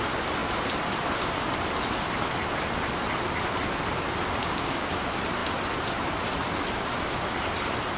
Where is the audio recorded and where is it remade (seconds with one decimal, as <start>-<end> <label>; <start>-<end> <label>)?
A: 0.0-4.4 recorded; 4.4-4.9 remade; 4.9-8.0 recorded